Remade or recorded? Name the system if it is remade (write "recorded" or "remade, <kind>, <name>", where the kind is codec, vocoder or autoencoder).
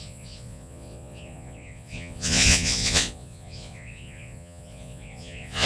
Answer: remade, vocoder, Vocos